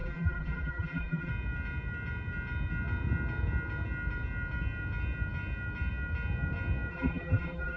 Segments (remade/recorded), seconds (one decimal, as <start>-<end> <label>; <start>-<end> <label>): 0.0-1.3 remade; 1.3-6.9 recorded; 6.9-7.8 remade